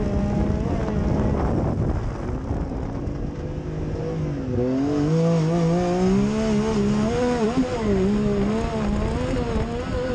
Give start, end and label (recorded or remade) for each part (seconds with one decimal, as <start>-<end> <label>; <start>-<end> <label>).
0.0-10.1 recorded